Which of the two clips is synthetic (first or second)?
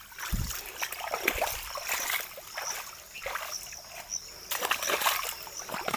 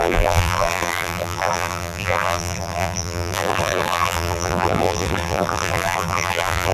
second